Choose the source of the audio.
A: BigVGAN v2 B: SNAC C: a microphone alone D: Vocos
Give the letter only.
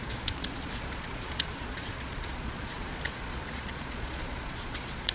D